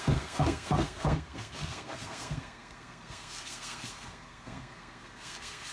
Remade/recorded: remade